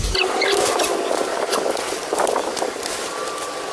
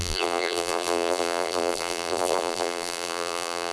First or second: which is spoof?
second